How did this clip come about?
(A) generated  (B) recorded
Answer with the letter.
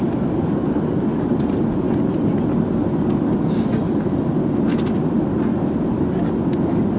B